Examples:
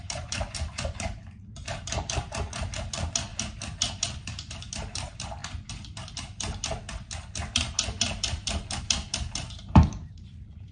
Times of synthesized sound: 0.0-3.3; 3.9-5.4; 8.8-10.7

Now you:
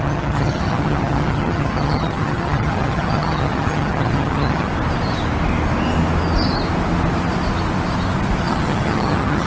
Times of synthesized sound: 0.0-4.7; 8.4-9.5

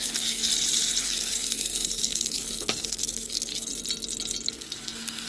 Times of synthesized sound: 0.0-0.5; 1.0-3.7; 4.5-5.3

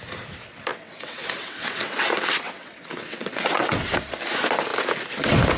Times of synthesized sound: 0.7-4.0

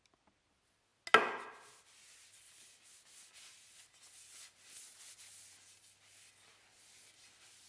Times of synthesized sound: none

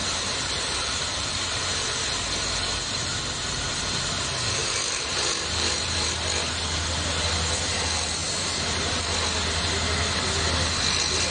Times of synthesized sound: 0.0-2.1; 4.6-6.1; 8.2-9.0

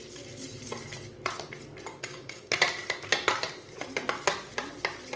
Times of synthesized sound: 1.9-2.5

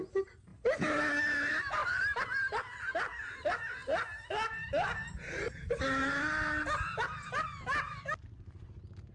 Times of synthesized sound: 1.8-2.4